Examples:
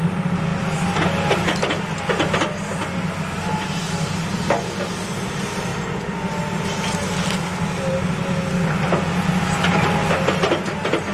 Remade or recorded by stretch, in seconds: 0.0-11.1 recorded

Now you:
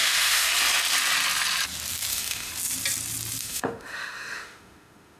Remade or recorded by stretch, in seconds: 0.0-0.5 remade; 0.5-2.1 recorded; 2.1-2.5 remade; 2.5-3.4 recorded; 3.4-5.2 remade